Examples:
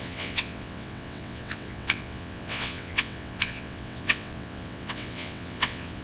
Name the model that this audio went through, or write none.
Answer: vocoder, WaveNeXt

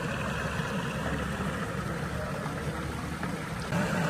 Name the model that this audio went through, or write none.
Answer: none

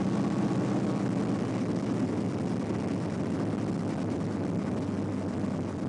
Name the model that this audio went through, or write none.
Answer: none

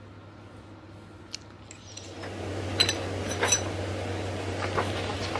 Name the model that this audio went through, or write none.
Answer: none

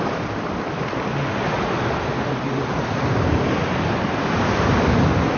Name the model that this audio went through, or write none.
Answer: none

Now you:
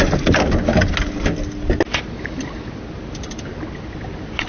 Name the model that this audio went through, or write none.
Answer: none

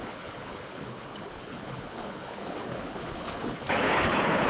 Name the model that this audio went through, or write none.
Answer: codec, HILCodec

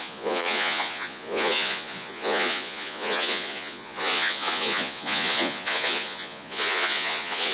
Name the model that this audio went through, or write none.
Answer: vocoder, Vocos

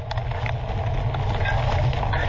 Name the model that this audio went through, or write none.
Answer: none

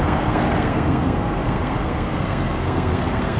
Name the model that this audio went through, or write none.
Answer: codec, SNAC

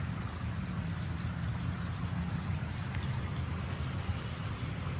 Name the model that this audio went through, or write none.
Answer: none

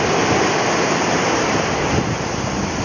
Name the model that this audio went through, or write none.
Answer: none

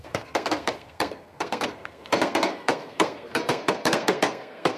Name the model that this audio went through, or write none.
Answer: codec, SNAC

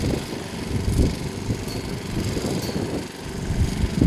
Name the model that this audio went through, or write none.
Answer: none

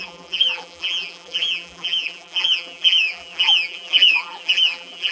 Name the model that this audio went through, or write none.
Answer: vocoder, BigVGAN v2